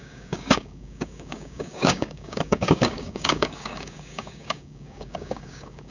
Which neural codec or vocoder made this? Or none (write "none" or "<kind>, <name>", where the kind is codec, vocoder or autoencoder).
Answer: codec, DAC